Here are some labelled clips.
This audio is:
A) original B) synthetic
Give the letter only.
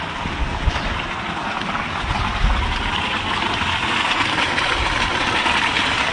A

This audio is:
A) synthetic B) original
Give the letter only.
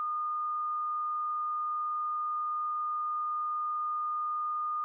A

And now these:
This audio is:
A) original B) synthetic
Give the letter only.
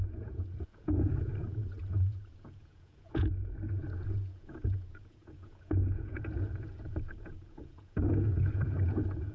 B